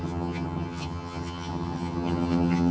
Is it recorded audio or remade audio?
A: remade